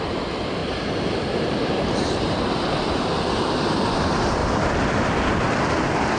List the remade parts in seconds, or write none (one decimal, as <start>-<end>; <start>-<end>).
0.6-2.6